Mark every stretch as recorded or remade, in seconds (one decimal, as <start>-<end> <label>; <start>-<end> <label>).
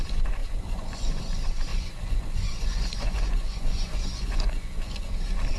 0.0-0.4 recorded; 0.4-1.2 remade; 1.2-1.7 recorded; 1.7-5.1 remade; 5.1-5.6 recorded